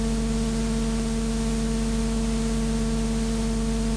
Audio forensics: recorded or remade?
recorded